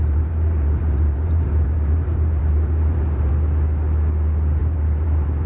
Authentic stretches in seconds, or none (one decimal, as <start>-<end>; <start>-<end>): 3.3-4.6